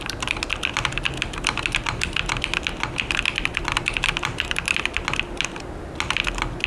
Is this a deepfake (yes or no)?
no